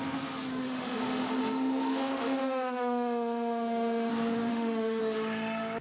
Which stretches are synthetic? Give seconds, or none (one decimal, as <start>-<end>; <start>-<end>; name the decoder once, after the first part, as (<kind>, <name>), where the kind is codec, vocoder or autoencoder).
0.6-4.1 (autoencoder, DAC-VAE); 4.5-5.0